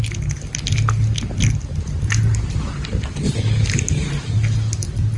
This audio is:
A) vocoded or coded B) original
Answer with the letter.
B